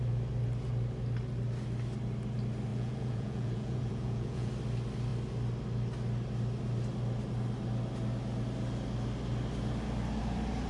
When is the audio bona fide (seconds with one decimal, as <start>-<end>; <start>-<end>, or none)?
0.0-2.7; 4.5-10.7